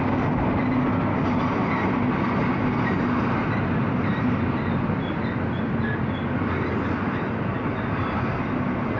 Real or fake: real